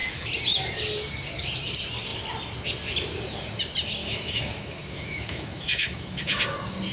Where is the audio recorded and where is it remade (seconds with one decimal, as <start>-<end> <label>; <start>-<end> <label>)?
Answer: 0.0-4.0 recorded; 4.0-6.4 remade; 6.4-6.9 recorded